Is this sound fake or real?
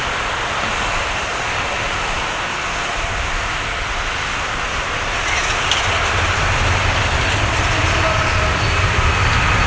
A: real